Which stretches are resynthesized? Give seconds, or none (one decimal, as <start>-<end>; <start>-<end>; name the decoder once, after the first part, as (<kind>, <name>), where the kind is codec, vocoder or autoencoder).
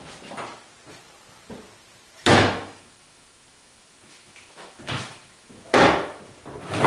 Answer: 2.2-6.2 (autoencoder, DAC-VAE)